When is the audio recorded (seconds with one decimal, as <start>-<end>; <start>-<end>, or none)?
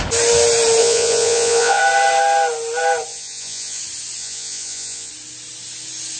0.0-0.8; 1.8-3.1; 3.8-4.2; 5.1-6.2